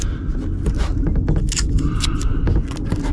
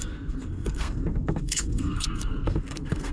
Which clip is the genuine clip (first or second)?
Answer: first